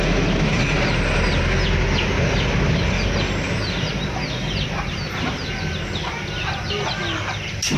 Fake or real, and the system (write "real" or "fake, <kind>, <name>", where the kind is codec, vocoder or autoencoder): real